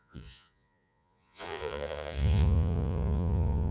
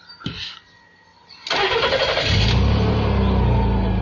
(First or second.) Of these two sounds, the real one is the second